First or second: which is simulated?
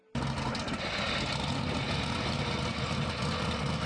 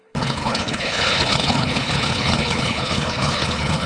second